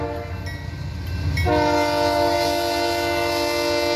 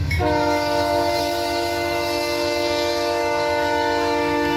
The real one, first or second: first